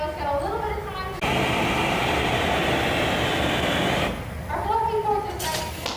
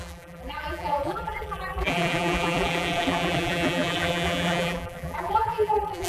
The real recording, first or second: first